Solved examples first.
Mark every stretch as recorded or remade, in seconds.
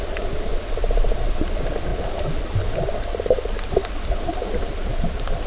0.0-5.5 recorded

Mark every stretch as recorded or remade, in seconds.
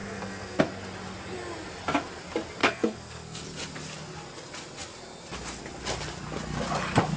0.0-0.6 remade; 0.6-2.6 recorded; 2.6-3.4 remade; 3.4-7.2 recorded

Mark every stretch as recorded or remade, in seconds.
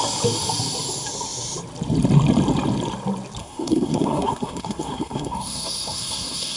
0.0-3.4 recorded; 3.4-6.6 remade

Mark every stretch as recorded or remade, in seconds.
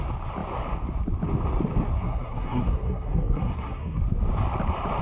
0.0-1.9 recorded; 1.9-4.0 remade; 4.0-5.0 recorded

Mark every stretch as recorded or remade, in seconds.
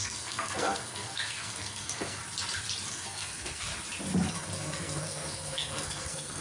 0.0-2.2 remade; 2.2-2.9 recorded; 2.9-3.7 remade; 3.7-4.3 recorded; 4.3-6.4 remade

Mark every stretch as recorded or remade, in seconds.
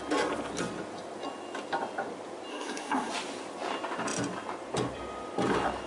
0.0-2.5 recorded; 2.5-3.1 remade; 3.1-5.9 recorded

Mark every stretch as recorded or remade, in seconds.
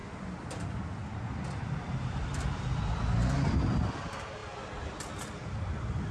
0.0-6.1 recorded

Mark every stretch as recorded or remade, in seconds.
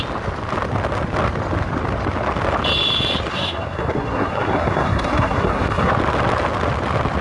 0.0-3.3 recorded; 3.3-5.9 remade; 5.9-7.2 recorded